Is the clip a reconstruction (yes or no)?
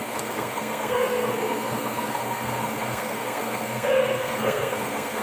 yes